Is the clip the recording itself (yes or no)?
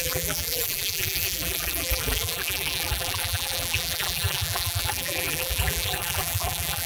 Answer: no